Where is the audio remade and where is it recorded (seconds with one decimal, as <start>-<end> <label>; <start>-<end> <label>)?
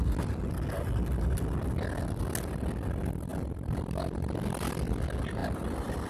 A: 0.0-3.3 recorded; 3.3-4.7 remade; 4.7-5.4 recorded; 5.4-6.1 remade